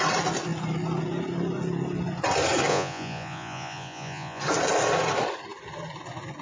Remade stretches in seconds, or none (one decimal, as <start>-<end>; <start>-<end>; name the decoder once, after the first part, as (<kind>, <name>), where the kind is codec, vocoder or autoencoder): 2.7-4.4 (vocoder, Vocos)